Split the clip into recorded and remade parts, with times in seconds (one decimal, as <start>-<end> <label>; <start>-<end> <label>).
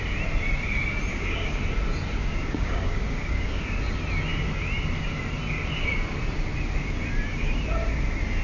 0.0-1.1 recorded; 1.1-1.6 remade; 1.6-2.2 recorded; 2.2-3.6 remade; 3.6-8.4 recorded